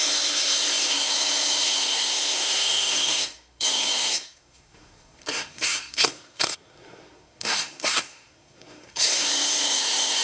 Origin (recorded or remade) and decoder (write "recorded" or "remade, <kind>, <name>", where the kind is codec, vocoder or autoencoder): remade, codec, SNAC